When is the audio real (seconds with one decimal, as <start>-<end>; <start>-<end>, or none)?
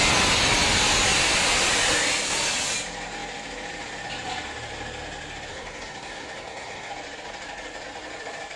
0.0-5.5; 6.9-8.6